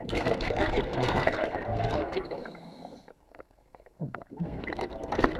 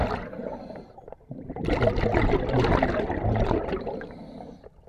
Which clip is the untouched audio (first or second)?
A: second